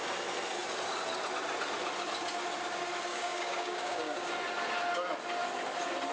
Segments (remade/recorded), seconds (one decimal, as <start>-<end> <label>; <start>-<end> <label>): 0.0-3.1 recorded; 3.1-4.3 remade; 4.3-6.1 recorded